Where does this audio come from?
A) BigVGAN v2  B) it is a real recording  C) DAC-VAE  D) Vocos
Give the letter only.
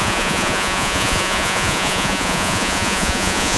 D